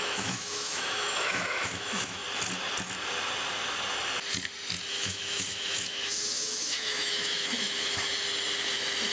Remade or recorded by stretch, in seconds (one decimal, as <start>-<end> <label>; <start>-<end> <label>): 0.0-2.2 remade; 2.2-4.9 recorded; 4.9-8.1 remade; 8.1-9.1 recorded